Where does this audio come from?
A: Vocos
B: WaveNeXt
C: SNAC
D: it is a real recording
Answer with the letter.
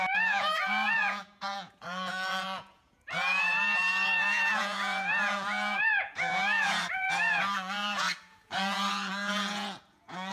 A